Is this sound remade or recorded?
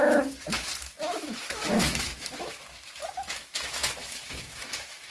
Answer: remade